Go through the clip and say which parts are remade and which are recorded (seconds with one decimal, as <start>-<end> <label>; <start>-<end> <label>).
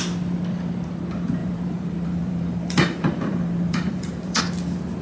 0.0-1.4 recorded; 1.4-4.4 remade; 4.4-5.0 recorded